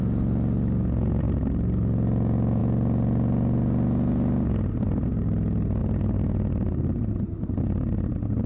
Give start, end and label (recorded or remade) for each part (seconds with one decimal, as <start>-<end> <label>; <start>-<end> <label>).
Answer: 0.0-5.8 recorded; 5.8-7.2 remade; 7.2-8.5 recorded